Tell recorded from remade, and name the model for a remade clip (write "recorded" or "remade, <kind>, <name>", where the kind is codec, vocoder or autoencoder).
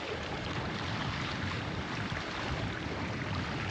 remade, vocoder, BigVGAN v2